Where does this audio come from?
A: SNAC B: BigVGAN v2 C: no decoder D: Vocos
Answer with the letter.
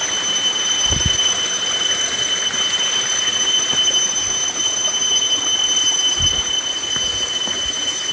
C